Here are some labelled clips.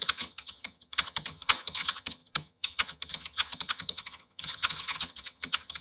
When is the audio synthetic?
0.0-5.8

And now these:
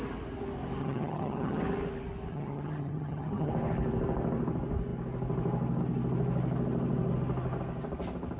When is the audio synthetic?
0.8-1.6; 2.3-3.5